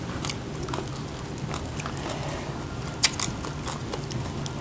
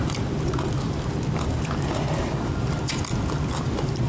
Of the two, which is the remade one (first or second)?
second